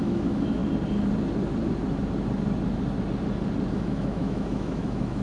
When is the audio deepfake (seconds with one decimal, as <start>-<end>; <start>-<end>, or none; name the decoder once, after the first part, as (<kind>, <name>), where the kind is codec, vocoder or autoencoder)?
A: 0.0-0.6 (autoencoder, DAC-VAE); 3.7-5.2